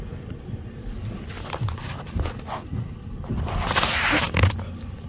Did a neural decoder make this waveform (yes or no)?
no